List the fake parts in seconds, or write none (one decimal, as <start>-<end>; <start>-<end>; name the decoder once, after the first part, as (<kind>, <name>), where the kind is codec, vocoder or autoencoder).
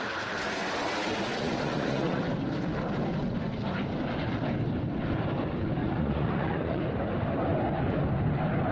1.3-2.2 (vocoder, Vocos); 5.8-6.8